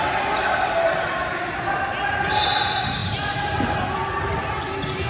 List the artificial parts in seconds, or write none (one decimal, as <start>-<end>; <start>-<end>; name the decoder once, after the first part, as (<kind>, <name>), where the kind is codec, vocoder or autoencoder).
none